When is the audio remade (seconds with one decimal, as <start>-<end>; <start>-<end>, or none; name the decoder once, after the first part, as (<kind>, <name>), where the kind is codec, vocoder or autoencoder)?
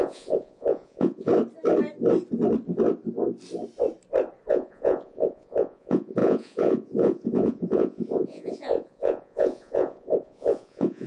0.0-1.3 (vocoder, Vocos); 4.5-11.1